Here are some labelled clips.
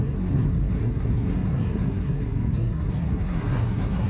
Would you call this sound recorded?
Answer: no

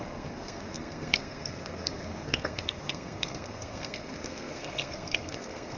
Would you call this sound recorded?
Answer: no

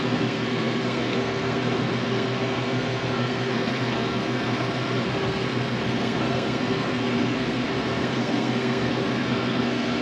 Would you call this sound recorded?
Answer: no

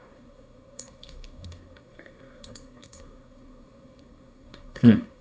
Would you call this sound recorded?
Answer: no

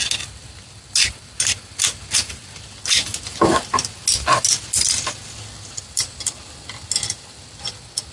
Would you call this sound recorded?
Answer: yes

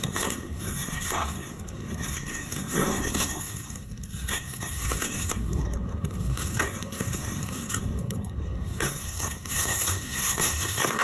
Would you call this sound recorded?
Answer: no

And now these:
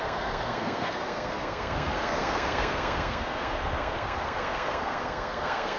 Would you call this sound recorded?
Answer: no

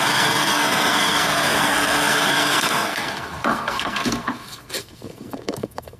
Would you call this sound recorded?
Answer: no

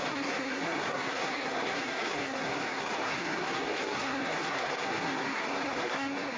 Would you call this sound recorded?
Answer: no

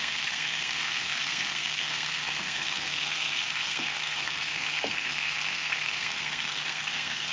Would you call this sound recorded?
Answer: no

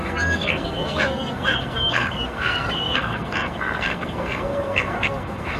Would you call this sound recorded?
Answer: no